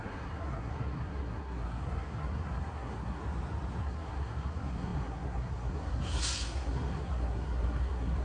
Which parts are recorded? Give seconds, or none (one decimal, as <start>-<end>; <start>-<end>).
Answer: 3.2-3.8